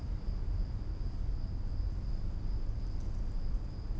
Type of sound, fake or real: real